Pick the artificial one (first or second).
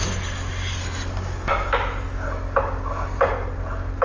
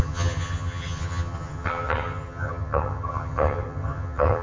second